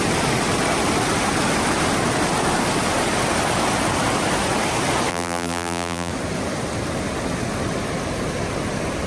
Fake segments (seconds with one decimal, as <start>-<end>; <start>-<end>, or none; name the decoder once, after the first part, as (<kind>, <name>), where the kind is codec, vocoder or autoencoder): 5.1-6.1 (vocoder, BigVGAN v2)